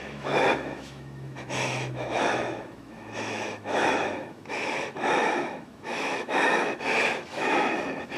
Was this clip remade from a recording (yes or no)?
yes